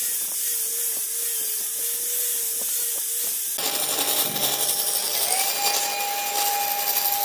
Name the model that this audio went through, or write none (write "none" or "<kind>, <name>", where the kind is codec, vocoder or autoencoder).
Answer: none